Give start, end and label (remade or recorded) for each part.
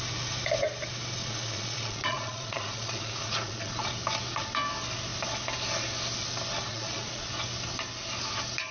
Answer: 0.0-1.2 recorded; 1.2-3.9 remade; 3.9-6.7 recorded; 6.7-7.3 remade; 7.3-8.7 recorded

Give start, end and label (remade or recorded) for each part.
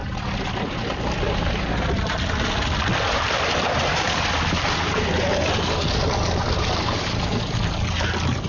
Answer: 0.0-8.5 recorded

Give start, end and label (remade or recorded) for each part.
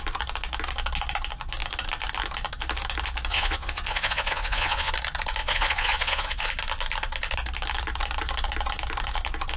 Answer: 0.0-3.3 recorded; 3.3-4.9 remade; 4.9-5.4 recorded; 5.4-6.5 remade; 6.5-9.6 recorded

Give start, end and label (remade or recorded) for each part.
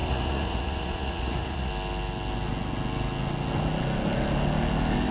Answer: 0.0-1.7 remade; 1.7-5.1 recorded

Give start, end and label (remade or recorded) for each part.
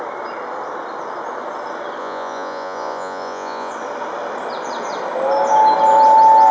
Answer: 0.0-2.0 recorded; 2.0-3.7 remade; 3.7-6.5 recorded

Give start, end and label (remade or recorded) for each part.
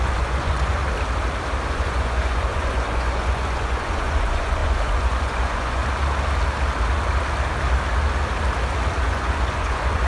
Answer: 0.0-0.8 remade; 0.8-1.7 recorded; 1.7-5.8 remade; 5.8-9.0 recorded; 9.0-10.1 remade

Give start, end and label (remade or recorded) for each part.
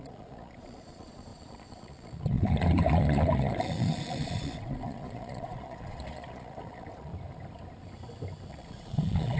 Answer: 0.0-7.1 remade; 7.1-8.5 recorded; 8.5-9.4 remade